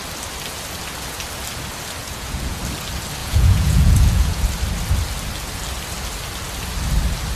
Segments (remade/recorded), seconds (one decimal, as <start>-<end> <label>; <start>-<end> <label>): 0.0-2.0 recorded; 2.0-2.6 remade; 2.6-3.2 recorded; 3.2-4.4 remade; 4.4-7.4 recorded